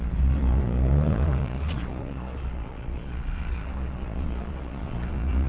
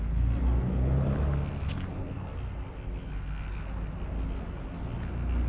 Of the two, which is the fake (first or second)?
first